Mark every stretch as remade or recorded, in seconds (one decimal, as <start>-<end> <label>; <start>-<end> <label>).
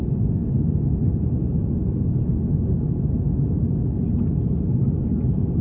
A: 0.0-5.6 recorded